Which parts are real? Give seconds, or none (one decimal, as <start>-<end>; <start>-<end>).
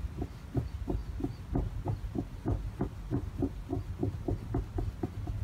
0.0-4.0; 4.6-5.4